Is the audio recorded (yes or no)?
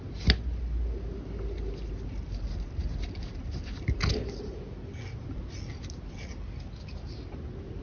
yes